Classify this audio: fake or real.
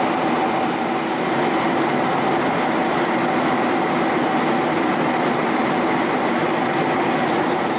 real